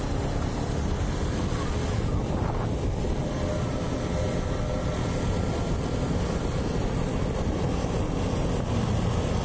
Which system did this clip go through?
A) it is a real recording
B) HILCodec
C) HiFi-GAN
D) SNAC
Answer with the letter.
A